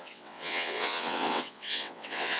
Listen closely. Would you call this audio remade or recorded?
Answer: remade